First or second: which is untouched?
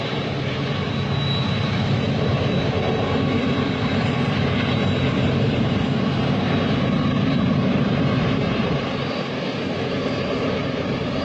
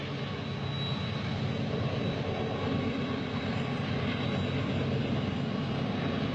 second